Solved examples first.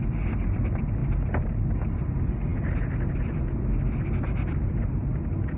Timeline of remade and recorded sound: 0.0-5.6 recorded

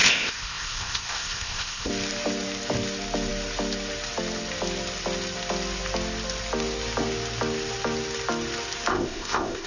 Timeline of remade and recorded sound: 0.0-1.9 remade; 1.9-8.9 recorded; 8.9-9.7 remade

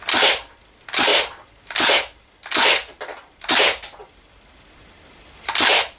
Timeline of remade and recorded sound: 0.0-6.0 recorded

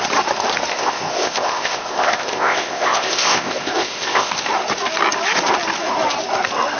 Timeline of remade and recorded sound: 0.0-0.7 recorded; 0.7-4.4 remade; 4.4-6.8 recorded

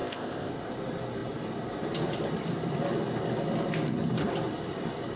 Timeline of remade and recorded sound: 0.0-0.5 remade; 0.5-5.2 recorded

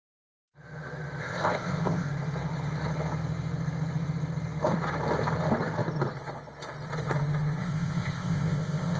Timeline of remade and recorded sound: 0.0-1.2 recorded; 1.2-2.1 remade; 2.1-7.6 recorded; 7.6-9.0 remade

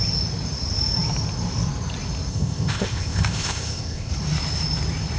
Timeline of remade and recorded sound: 0.0-2.3 recorded; 2.3-4.1 remade; 4.1-5.2 recorded

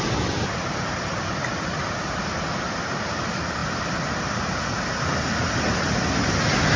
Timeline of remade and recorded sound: 0.0-6.8 recorded